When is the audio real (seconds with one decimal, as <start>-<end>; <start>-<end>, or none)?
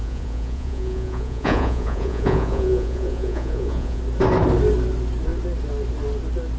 4.0-6.6